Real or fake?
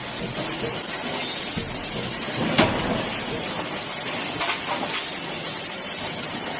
real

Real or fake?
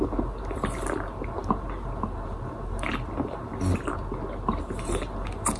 real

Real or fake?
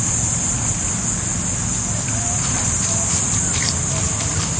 real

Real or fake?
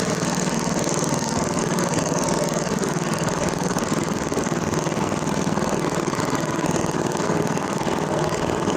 fake